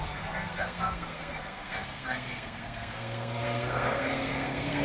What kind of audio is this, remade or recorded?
remade